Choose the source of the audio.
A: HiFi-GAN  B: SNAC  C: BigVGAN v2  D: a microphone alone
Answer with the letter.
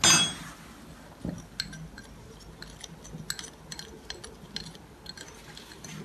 D